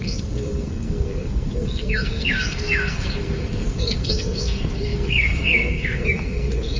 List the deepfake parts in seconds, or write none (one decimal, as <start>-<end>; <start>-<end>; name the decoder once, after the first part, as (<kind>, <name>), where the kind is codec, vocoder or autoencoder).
0.0-6.8 (codec, SNAC)